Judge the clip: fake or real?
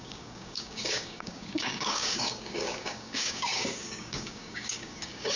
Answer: fake